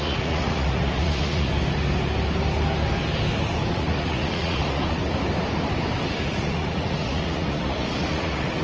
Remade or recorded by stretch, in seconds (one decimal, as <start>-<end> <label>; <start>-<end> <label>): 0.0-1.5 remade; 1.5-3.7 recorded; 3.7-5.0 remade; 5.0-6.2 recorded; 6.2-8.6 remade